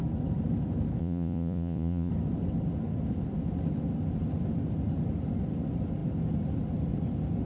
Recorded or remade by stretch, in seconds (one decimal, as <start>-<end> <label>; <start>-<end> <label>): 0.0-1.0 recorded; 1.0-2.1 remade; 2.1-7.5 recorded